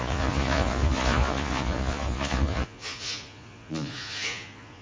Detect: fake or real fake